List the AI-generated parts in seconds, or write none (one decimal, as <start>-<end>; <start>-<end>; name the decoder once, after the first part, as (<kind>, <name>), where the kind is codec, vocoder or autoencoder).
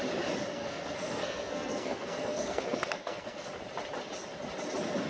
0.5-3.5 (codec, SNAC)